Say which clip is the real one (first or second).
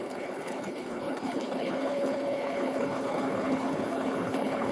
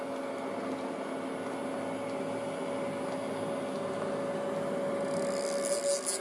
second